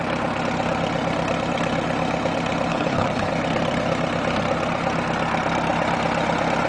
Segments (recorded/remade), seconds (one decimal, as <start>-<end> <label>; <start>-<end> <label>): 0.0-2.7 recorded; 2.7-3.3 remade; 3.3-6.7 recorded